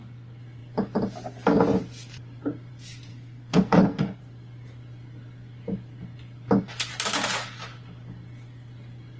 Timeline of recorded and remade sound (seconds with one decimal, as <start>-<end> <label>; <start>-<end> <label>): 0.0-3.1 recorded; 3.1-4.2 remade; 4.2-9.2 recorded